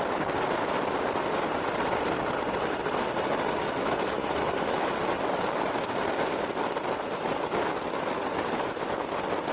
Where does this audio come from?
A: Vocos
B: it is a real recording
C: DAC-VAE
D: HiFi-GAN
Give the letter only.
B